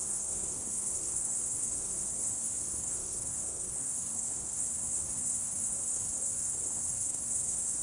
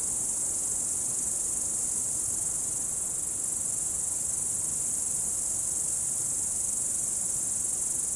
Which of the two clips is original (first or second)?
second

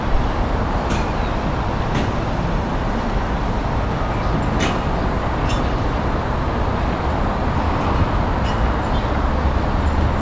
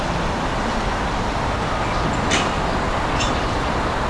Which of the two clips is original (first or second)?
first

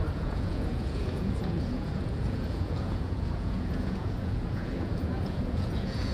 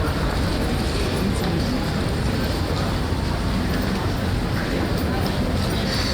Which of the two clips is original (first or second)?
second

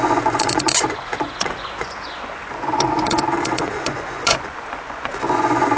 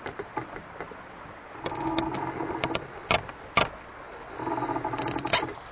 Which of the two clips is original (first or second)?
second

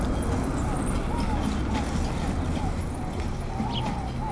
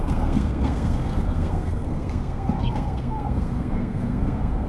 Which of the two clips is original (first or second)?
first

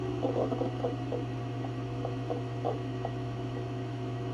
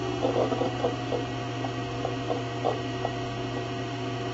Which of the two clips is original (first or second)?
second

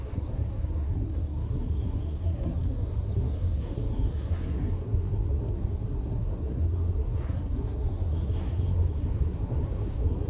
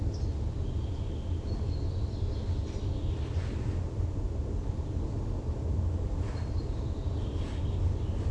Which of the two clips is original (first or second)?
second